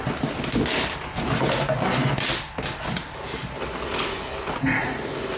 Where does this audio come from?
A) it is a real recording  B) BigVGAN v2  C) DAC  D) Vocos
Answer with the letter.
A